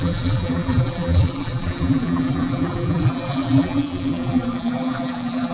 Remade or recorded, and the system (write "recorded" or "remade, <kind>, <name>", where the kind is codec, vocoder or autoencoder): remade, vocoder, BigVGAN v2